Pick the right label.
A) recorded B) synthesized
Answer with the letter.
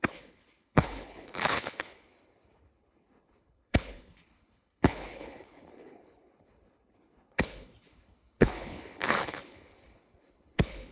B